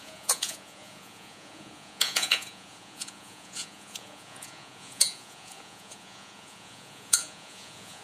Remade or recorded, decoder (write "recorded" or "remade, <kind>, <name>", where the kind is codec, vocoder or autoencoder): remade, vocoder, Vocos